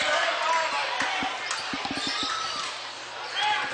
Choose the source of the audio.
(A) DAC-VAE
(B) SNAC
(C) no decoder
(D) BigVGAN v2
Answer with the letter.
C